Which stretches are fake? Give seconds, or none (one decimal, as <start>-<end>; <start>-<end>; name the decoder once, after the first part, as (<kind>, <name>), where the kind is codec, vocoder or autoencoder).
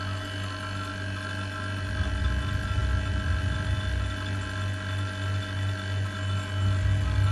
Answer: none